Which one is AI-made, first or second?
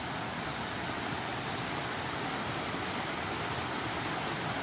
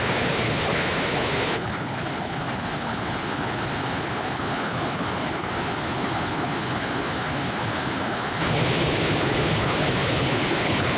second